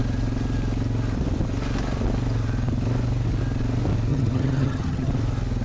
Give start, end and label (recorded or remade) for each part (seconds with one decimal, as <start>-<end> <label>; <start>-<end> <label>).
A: 0.0-4.1 recorded; 4.1-5.1 remade; 5.1-5.6 recorded

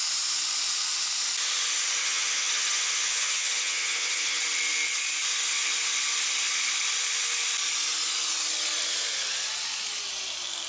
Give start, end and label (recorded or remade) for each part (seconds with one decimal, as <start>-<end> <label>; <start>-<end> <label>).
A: 0.0-2.0 recorded; 2.0-4.4 remade; 4.4-10.7 recorded

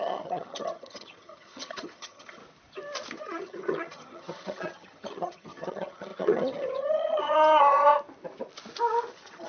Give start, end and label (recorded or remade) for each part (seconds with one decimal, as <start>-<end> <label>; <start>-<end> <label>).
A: 0.0-2.4 remade; 2.4-3.2 recorded; 3.2-7.9 remade; 7.9-9.1 recorded; 9.1-9.5 remade

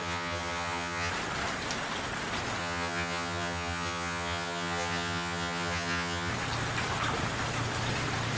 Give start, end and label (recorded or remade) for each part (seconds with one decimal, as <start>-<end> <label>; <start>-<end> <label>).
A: 0.0-1.1 remade; 1.1-2.6 recorded; 2.6-6.3 remade; 6.3-8.4 recorded

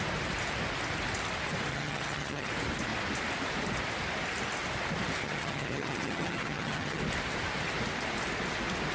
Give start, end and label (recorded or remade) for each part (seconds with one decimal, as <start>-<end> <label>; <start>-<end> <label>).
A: 0.0-1.7 recorded; 1.7-2.5 remade; 2.5-5.2 recorded; 5.2-7.0 remade; 7.0-8.9 recorded